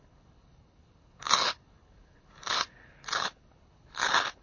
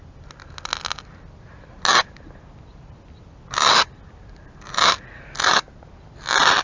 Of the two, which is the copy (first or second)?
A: first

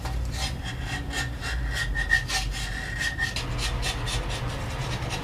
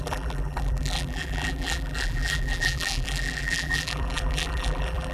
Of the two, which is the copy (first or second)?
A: second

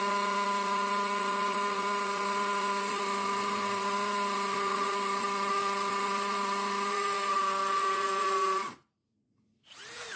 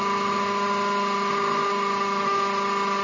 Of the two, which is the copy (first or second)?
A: first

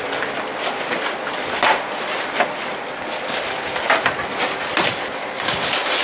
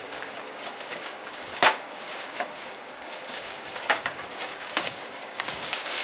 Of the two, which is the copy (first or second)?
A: second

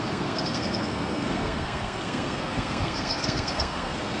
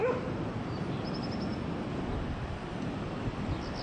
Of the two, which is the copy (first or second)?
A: first